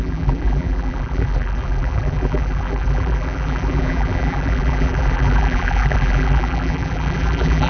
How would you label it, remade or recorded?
remade